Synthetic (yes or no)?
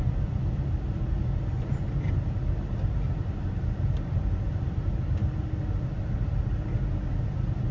no